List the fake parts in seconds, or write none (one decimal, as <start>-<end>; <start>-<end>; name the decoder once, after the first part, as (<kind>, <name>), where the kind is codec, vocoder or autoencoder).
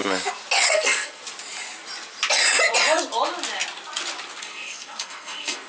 0.7-1.2 (codec, SNAC); 4.4-5.7